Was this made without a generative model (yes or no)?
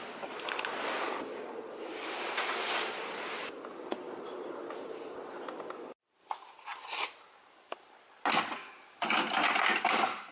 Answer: yes